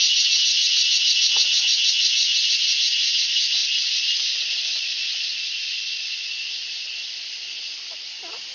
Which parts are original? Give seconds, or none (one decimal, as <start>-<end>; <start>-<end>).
0.0-8.5